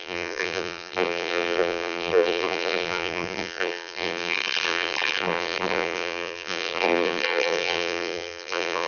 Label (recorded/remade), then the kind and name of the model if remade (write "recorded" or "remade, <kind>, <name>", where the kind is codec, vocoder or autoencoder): remade, vocoder, BigVGAN v2